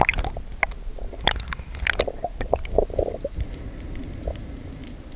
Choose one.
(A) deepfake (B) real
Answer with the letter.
B